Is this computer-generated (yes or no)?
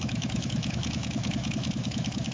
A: yes